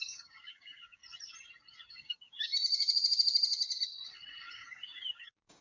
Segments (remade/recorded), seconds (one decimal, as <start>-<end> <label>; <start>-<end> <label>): 0.0-1.0 remade; 1.0-1.9 recorded; 1.9-2.5 remade; 2.5-4.5 recorded; 4.5-5.6 remade